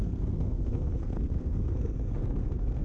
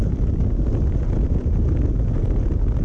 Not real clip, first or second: first